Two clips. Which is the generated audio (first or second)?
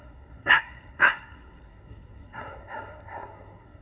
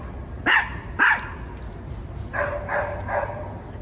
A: first